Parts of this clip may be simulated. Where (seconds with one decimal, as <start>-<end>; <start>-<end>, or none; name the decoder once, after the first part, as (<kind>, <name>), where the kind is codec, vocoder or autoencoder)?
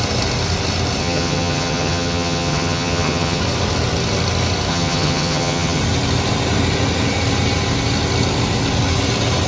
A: 1.0-3.4 (vocoder, HiFi-GAN); 4.7-5.8